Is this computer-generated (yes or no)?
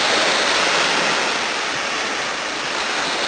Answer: no